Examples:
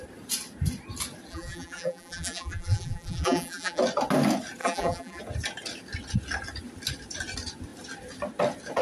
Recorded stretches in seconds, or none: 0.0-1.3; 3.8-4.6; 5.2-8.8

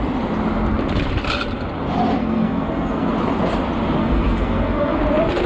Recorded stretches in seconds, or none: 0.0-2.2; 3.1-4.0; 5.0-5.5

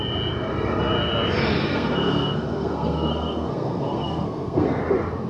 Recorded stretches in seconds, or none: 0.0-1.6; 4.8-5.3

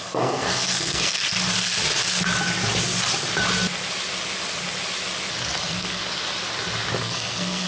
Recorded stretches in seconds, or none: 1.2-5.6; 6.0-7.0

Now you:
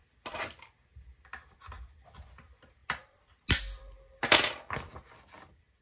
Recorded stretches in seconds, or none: 0.0-2.8

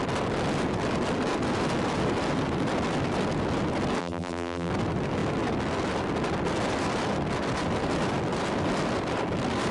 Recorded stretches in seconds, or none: 0.0-4.0; 4.7-9.7

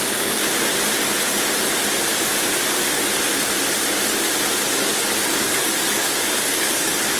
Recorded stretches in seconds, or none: 0.4-4.7